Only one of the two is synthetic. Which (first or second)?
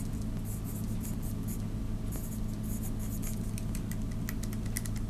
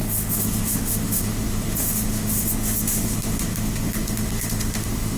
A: second